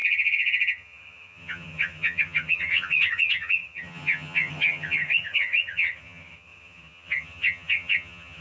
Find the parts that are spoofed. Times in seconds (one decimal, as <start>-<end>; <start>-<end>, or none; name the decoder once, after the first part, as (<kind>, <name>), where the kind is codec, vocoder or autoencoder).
0.0-8.4 (vocoder, HiFi-GAN)